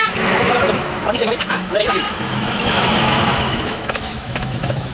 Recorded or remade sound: remade